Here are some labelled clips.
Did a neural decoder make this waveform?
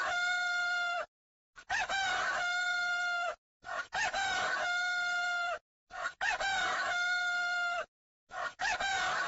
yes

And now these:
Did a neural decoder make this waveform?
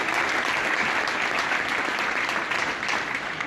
no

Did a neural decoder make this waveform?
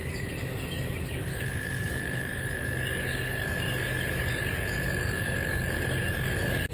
yes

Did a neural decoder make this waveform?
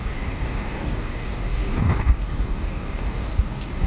yes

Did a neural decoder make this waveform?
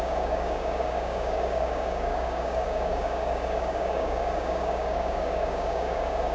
yes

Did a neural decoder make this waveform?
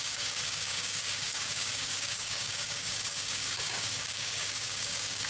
yes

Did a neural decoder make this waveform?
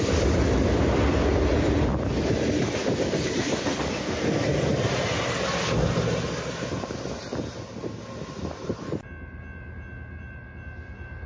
no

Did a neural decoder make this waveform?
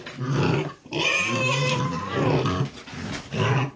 no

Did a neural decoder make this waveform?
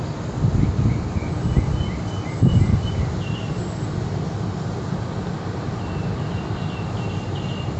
no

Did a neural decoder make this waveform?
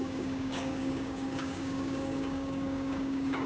yes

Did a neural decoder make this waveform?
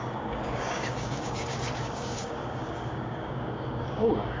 yes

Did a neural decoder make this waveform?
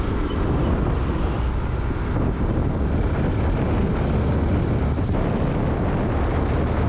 no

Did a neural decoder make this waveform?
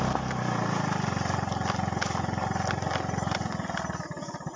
no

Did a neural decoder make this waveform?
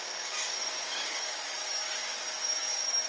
yes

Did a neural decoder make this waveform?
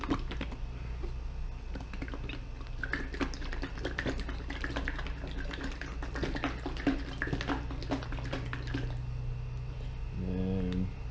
no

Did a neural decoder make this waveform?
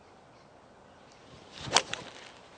no